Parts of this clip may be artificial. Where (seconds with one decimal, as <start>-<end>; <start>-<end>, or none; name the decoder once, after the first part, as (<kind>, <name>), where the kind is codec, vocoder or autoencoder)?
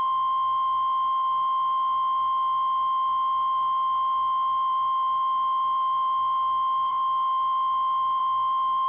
none